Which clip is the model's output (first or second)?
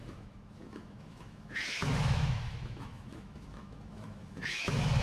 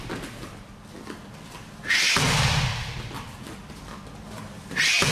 first